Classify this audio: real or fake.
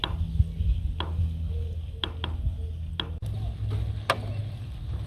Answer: real